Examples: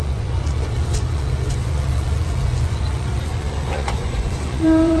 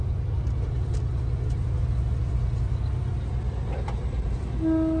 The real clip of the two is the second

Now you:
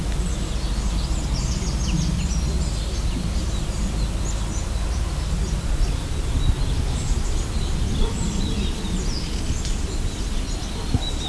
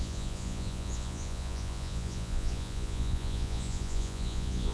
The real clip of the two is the first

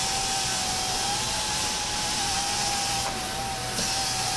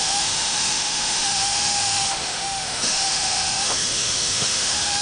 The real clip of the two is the first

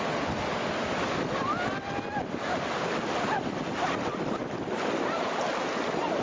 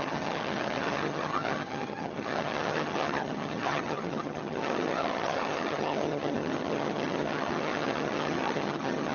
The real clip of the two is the first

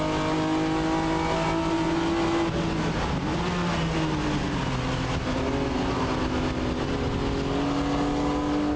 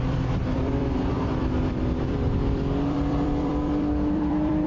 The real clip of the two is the first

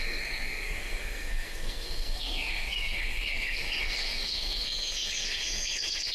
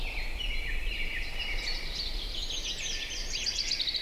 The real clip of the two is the second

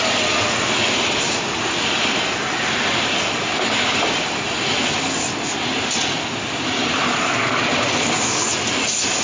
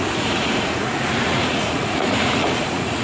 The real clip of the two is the first